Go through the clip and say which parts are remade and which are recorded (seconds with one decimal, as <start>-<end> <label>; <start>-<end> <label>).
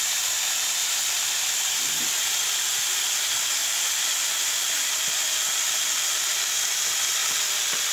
0.0-7.9 recorded